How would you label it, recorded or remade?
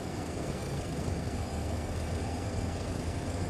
remade